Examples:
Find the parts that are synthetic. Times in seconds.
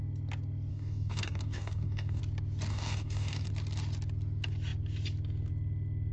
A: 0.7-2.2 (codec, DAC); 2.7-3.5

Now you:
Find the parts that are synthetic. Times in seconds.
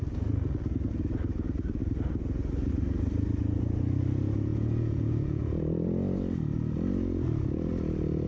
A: 4.5-5.6 (vocoder, Vocos)